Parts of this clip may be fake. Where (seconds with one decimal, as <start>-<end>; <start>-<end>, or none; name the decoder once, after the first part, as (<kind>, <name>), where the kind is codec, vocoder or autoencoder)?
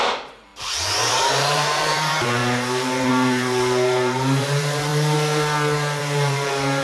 0.0-0.5 (vocoder, BigVGAN v2); 1.1-4.9; 6.0-6.8